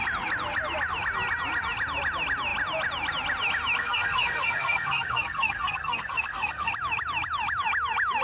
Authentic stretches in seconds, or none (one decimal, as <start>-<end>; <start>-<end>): 0.0-3.8; 6.7-8.2